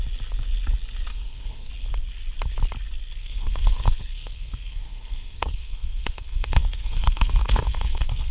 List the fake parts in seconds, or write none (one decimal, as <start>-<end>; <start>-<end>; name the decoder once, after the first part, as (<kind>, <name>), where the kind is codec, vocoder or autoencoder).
1.1-1.7 (codec, SNAC); 3.2-8.3